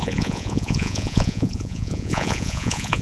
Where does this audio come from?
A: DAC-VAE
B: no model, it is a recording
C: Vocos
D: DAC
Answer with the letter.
C